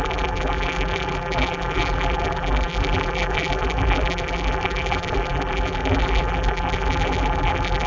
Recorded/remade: remade